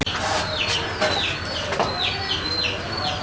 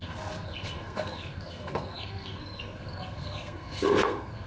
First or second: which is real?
first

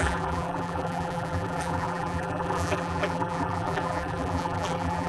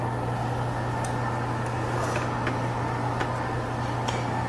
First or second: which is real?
second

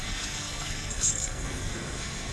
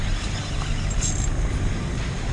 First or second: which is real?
second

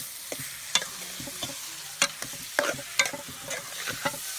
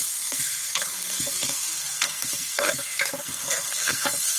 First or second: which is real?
first